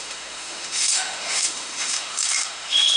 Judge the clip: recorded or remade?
remade